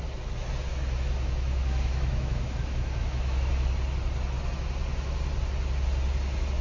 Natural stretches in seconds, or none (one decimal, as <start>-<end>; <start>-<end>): 0.0-0.7; 3.5-6.6